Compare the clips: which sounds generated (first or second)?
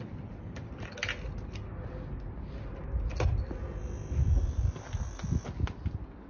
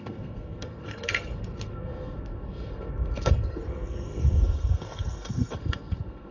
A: second